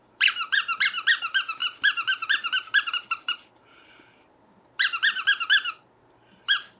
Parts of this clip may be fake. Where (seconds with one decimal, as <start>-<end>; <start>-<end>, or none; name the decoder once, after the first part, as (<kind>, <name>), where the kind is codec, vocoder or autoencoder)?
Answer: none